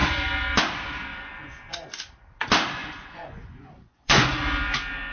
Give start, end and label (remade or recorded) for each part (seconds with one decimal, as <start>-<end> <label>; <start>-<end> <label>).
0.0-1.1 recorded; 1.1-1.9 remade; 1.9-2.8 recorded; 2.8-4.4 remade; 4.4-5.1 recorded